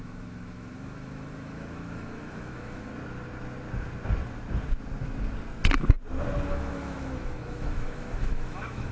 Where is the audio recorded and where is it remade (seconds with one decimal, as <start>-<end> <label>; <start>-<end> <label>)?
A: 0.0-2.9 remade; 2.9-6.5 recorded; 6.5-8.9 remade